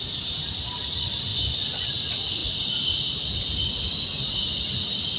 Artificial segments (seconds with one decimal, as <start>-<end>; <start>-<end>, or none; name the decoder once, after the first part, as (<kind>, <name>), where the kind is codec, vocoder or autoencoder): 1.3-1.9 (vocoder, Vocos)